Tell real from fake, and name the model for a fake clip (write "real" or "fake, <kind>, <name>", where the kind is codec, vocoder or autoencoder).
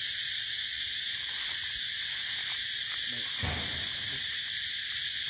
real